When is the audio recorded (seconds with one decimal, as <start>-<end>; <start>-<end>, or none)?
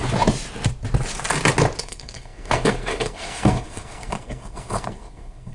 0.0-1.8